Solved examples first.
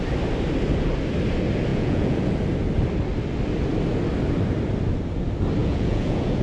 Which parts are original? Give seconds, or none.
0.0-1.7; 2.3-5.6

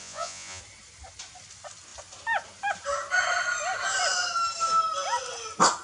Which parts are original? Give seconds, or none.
0.6-5.8

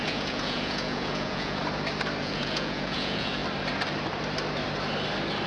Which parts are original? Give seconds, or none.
1.6-2.2; 3.4-5.5